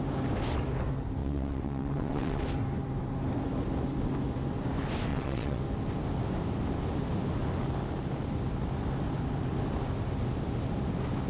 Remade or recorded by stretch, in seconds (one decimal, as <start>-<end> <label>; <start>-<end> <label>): 0.0-1.2 recorded; 1.2-2.4 remade; 2.4-5.1 recorded; 5.1-5.6 remade; 5.6-11.3 recorded

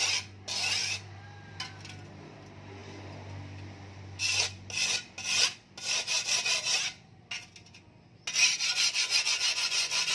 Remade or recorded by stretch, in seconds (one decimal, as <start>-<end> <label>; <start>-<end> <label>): 0.0-8.7 recorded; 8.7-10.1 remade

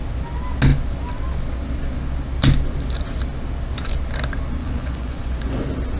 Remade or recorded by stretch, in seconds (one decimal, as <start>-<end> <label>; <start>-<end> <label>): 0.0-4.6 recorded; 4.6-5.6 remade; 5.6-6.0 recorded

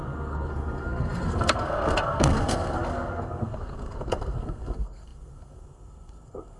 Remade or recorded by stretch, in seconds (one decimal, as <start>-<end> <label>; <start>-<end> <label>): 0.0-6.6 remade

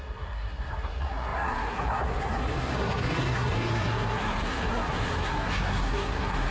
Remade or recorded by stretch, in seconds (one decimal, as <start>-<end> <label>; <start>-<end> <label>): 0.0-6.5 remade

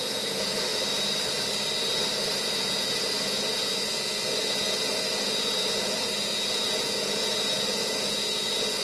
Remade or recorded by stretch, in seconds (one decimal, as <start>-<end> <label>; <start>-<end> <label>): 0.0-0.7 remade; 0.7-2.3 recorded; 2.3-8.8 remade

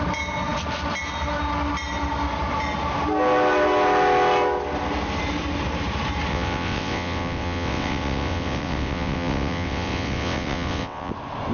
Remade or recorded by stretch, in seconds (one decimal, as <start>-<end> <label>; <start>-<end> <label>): 0.0-6.3 recorded; 6.3-11.1 remade; 11.1-11.5 recorded